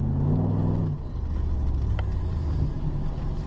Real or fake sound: real